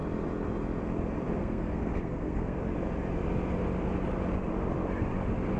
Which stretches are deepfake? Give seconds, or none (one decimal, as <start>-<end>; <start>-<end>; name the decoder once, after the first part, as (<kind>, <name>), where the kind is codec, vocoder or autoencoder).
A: 1.4-2.6 (codec, SNAC)